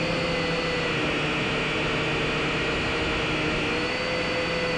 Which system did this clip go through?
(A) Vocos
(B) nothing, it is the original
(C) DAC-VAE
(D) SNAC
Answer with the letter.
B